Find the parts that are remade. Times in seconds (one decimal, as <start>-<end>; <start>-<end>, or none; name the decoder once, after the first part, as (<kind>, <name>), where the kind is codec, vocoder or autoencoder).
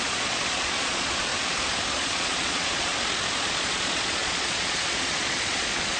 0.0-1.3 (vocoder, Vocos); 1.9-2.9; 3.4-6.0